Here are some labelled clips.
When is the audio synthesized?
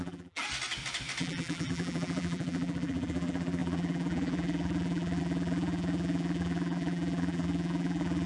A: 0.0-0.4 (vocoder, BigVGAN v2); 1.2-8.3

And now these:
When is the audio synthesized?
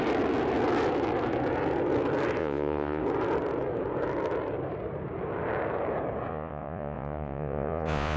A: 2.4-3.0 (vocoder, Vocos); 6.3-8.2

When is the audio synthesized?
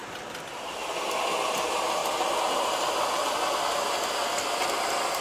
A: none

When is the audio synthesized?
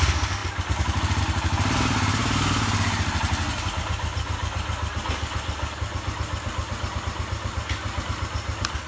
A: none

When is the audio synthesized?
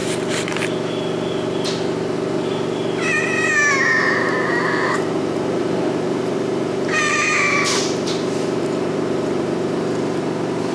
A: 3.9-10.7 (vocoder, BigVGAN v2)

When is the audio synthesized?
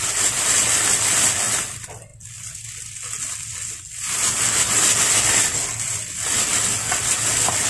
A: none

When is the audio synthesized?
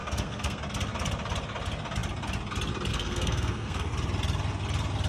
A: 0.0-0.6 (codec, SNAC); 2.9-3.9